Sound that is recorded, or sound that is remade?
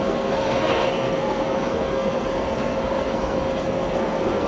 remade